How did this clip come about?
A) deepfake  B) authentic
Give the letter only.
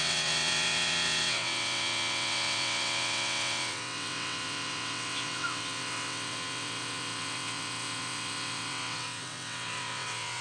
A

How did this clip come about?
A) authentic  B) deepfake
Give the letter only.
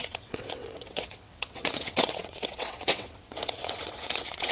B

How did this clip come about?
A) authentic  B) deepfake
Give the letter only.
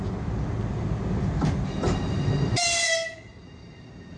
A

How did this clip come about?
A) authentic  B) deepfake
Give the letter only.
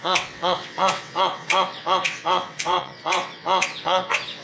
B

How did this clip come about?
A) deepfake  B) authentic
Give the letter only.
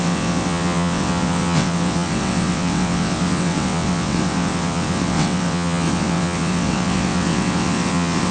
A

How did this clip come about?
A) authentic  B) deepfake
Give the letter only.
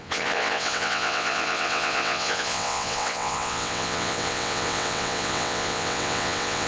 B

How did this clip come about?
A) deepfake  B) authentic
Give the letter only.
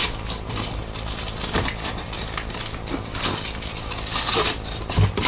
B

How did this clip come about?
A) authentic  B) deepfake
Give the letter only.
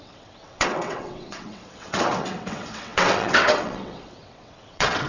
B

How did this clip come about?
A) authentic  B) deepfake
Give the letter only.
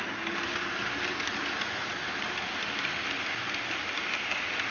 A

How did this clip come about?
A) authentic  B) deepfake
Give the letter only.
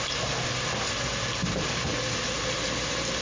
A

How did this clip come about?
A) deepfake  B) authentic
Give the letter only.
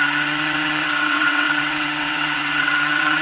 A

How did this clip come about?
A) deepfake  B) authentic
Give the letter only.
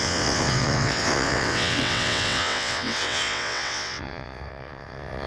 A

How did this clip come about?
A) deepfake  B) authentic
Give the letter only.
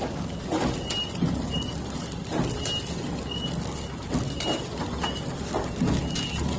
B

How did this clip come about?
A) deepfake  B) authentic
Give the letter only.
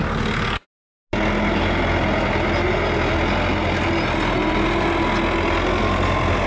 B